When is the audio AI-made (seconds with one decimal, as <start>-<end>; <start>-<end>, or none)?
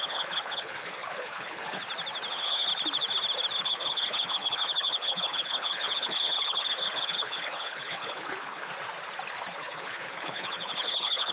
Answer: 0.0-1.8; 2.3-2.7; 3.6-8.7; 9.5-11.3